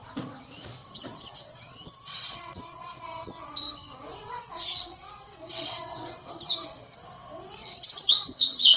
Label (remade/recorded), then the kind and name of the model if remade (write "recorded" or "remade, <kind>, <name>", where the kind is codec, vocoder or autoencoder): remade, vocoder, WaveNeXt